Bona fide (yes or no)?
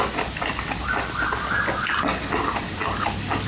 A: yes